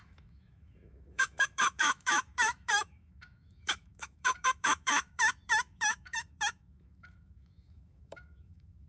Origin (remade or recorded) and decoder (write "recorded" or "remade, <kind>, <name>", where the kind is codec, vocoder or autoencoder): remade, autoencoder, DAC-VAE